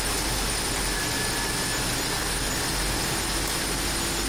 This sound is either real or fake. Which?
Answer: real